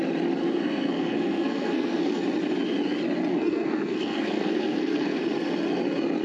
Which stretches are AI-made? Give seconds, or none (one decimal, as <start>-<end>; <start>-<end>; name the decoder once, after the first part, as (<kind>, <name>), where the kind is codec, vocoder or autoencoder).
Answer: 0.4-2.2 (codec, SNAC); 3.3-5.2